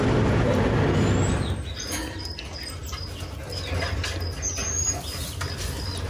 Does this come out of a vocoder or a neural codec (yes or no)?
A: no